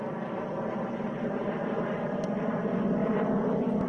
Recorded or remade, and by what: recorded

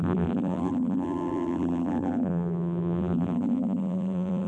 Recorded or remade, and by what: remade, vocoder, BigVGAN v2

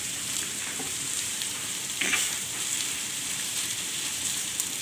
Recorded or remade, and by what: remade, vocoder, BigVGAN v2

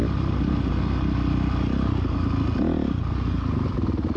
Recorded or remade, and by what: recorded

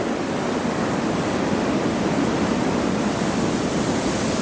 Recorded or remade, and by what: recorded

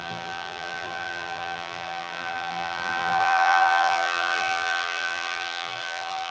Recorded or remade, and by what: remade, vocoder, BigVGAN v2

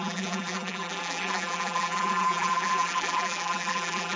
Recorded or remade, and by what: remade, vocoder, BigVGAN v2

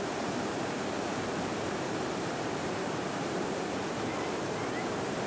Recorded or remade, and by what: remade, vocoder, BigVGAN v2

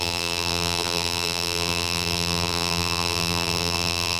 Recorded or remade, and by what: remade, vocoder, BigVGAN v2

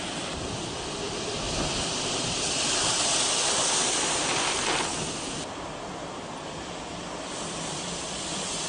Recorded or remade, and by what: remade, vocoder, BigVGAN v2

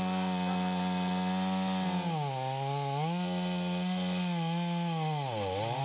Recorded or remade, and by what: recorded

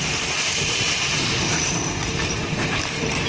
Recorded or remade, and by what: remade, vocoder, BigVGAN v2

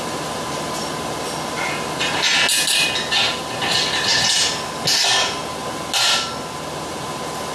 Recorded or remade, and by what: recorded